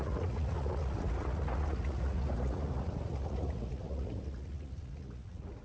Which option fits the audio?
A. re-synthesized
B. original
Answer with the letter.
A